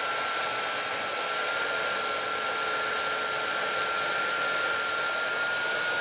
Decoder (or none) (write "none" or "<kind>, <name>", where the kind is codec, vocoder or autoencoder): none